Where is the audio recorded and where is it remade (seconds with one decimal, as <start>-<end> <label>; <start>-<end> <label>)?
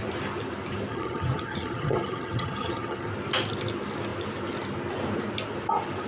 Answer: 0.0-0.9 recorded; 0.9-3.1 remade; 3.1-6.1 recorded